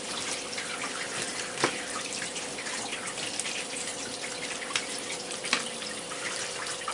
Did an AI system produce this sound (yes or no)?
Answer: yes